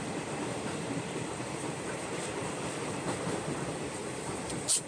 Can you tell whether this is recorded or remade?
remade